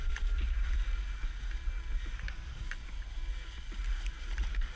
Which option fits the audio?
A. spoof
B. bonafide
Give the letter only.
B